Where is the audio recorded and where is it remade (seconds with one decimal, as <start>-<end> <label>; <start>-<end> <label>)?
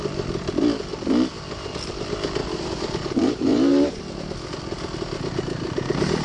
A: 0.0-2.4 recorded; 2.4-4.0 remade; 4.0-6.2 recorded